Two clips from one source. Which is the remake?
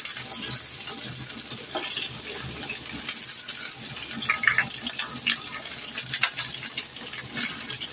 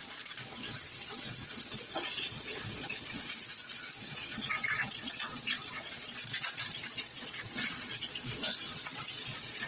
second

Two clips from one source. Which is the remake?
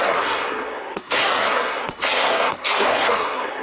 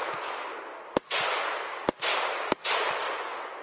first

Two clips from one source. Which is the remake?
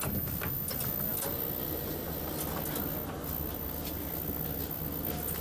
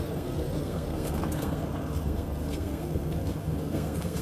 second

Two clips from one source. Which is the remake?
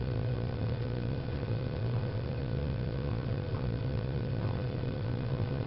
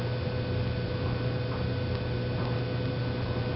first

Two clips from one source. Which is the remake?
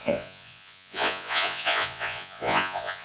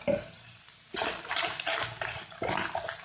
first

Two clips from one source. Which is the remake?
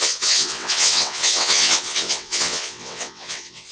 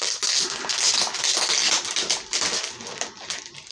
first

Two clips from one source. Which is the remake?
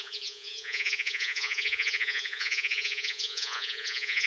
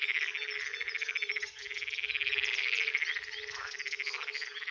first